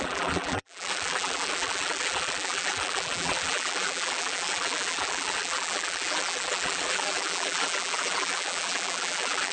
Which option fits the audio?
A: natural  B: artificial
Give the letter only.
B